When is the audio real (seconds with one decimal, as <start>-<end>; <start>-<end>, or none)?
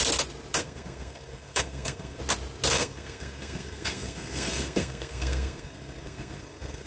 0.0-0.6; 2.2-2.7